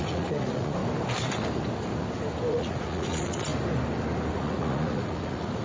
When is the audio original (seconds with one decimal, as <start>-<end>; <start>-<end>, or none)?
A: 0.8-2.5; 3.5-4.3

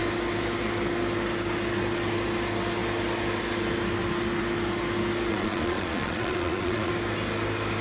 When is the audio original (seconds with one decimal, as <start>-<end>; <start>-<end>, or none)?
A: 0.0-5.3; 6.9-7.8

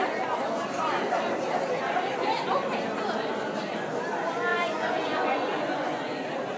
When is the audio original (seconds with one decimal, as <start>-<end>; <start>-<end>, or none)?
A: 0.0-4.5; 6.0-6.6

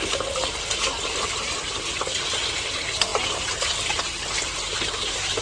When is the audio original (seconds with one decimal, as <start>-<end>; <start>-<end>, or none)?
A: 0.0-5.4

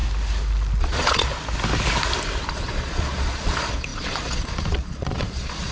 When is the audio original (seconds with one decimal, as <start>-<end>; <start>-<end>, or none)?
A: 0.0-0.8; 1.3-2.5

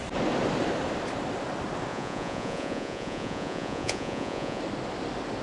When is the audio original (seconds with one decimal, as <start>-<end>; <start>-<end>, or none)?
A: 0.0-1.9; 4.6-5.4